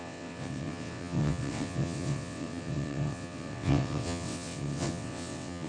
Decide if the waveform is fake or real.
fake